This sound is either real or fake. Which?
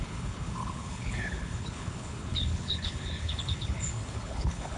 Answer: fake